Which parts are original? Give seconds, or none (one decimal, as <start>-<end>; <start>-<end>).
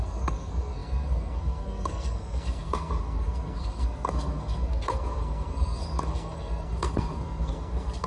none